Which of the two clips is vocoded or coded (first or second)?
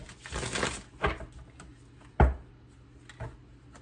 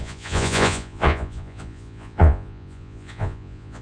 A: second